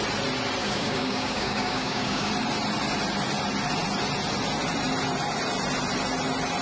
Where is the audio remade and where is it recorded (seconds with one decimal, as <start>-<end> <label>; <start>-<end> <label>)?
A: 0.0-0.6 recorded; 0.6-2.3 remade; 2.3-6.6 recorded